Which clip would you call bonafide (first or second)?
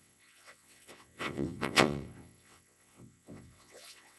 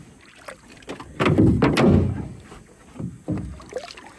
second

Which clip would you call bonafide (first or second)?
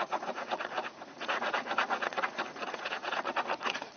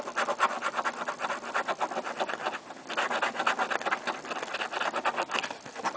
second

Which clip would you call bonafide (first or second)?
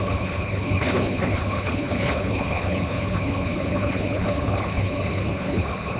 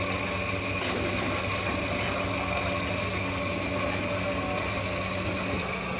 second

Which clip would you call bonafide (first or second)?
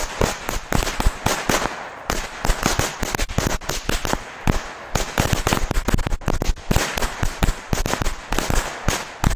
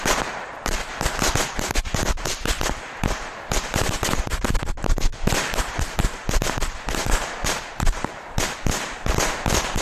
first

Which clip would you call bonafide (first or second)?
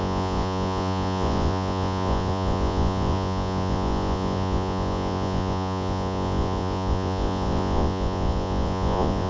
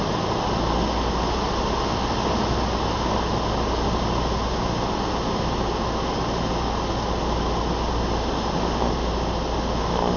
second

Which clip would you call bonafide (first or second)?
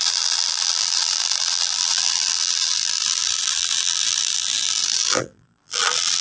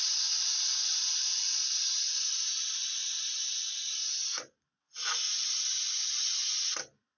second